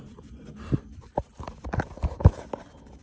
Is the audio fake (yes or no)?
yes